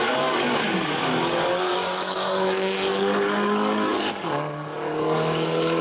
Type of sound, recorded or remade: remade